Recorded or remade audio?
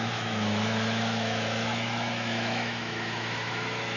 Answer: remade